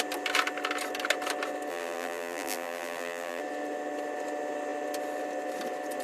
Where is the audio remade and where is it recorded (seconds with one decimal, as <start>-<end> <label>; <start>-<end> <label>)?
0.0-1.7 recorded; 1.7-3.4 remade; 3.4-6.0 recorded